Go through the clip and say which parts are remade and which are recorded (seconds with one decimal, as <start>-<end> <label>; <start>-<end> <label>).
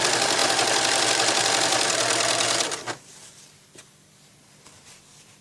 0.0-5.4 recorded